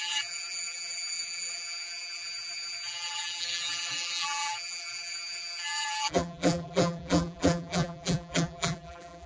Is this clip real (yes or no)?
no